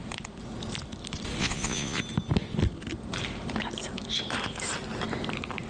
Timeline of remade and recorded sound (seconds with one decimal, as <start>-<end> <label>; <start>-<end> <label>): 0.0-1.4 recorded; 1.4-2.0 remade; 2.0-5.7 recorded